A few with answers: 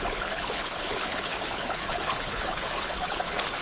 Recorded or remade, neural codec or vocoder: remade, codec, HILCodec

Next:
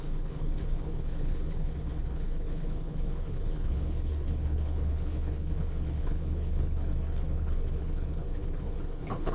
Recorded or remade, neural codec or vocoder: remade, codec, HILCodec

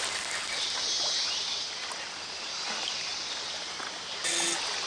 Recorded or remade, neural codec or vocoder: recorded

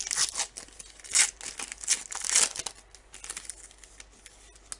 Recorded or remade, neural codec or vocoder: recorded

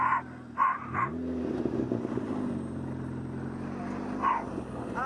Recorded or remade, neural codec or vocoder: recorded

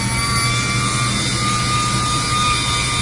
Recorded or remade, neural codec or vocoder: recorded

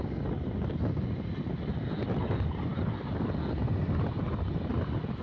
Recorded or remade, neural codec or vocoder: recorded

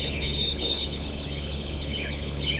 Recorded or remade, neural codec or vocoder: remade, codec, HILCodec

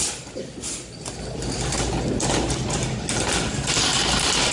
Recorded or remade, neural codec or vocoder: recorded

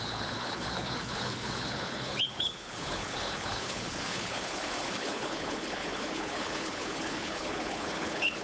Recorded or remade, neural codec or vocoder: remade, codec, HILCodec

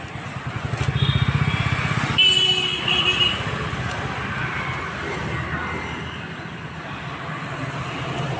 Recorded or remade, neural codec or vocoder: recorded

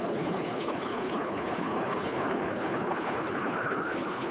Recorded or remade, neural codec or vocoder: remade, codec, HILCodec